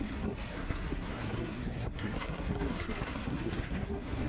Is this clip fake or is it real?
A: fake